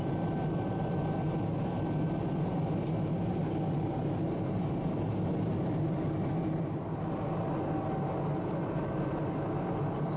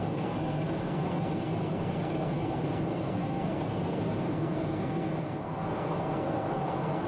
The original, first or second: first